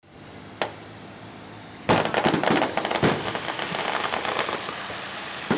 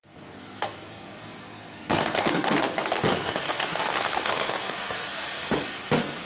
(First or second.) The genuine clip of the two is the first